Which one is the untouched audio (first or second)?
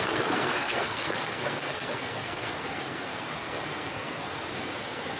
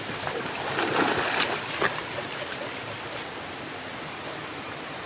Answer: second